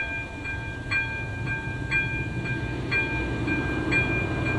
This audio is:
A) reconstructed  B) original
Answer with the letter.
B